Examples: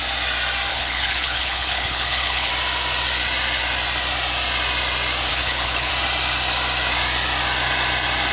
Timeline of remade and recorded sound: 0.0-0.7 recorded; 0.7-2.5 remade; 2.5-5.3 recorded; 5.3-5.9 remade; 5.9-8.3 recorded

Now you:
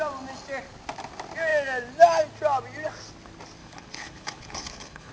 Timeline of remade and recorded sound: 0.0-3.6 recorded; 3.6-5.1 remade

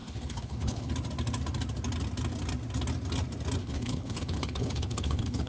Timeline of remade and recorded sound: 0.0-0.9 remade; 0.9-3.6 recorded; 3.6-5.5 remade

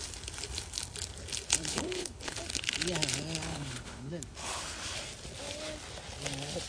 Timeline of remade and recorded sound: 0.0-1.7 recorded; 1.7-2.4 remade; 2.4-3.5 recorded; 3.5-4.1 remade; 4.1-6.7 recorded